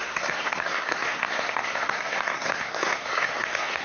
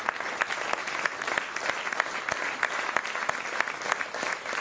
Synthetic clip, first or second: first